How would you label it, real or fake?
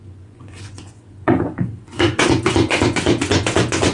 fake